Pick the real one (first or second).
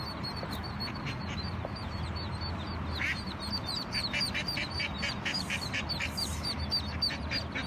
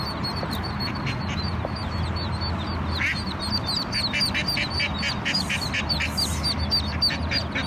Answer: second